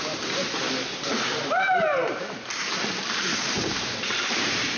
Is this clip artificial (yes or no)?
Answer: yes